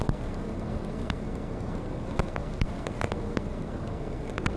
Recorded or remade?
remade